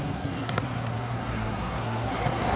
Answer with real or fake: fake